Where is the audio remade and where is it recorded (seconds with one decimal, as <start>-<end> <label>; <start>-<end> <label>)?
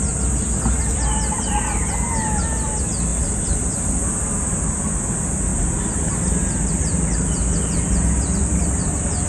0.0-3.1 recorded; 3.1-4.9 remade; 4.9-9.3 recorded